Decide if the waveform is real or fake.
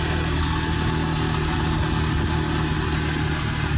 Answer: real